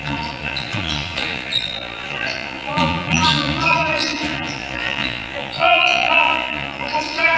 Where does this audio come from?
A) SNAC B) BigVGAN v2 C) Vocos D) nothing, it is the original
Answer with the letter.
C